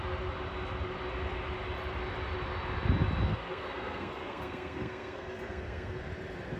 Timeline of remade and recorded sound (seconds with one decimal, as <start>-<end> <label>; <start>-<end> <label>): 0.0-3.3 recorded; 3.3-6.0 remade; 6.0-6.6 recorded